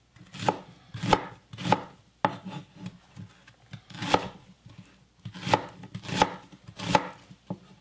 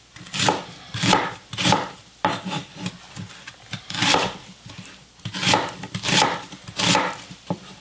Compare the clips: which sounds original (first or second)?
first